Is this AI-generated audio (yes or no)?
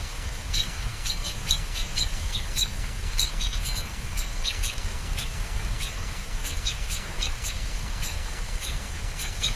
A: yes